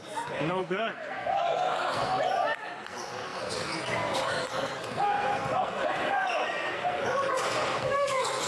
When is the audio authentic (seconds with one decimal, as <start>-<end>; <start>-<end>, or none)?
none